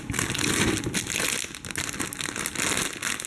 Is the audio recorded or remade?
recorded